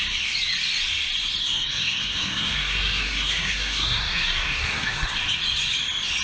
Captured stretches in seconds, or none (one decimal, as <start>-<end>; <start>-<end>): 0.0-1.4; 5.1-6.2